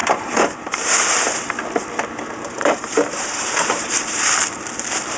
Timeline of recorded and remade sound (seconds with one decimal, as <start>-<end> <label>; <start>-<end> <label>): 0.0-1.0 remade; 1.0-2.6 recorded; 2.6-4.2 remade; 4.2-5.2 recorded